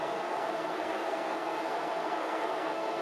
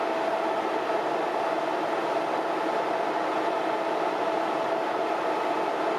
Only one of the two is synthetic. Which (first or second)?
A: first